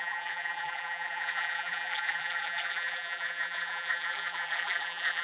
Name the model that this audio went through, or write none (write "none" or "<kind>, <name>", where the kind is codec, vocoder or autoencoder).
vocoder, BigVGAN v2